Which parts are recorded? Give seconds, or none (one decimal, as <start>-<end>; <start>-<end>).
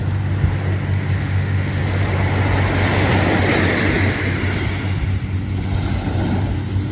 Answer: 0.0-1.2; 1.8-6.9